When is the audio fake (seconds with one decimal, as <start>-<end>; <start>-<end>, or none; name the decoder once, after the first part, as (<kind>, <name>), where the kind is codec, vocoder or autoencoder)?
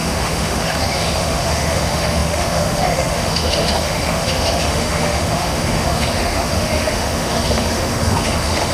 0.0-8.7 (autoencoder, DAC-VAE)